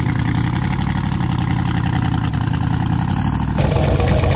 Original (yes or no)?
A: yes